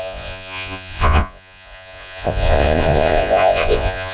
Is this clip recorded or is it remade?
remade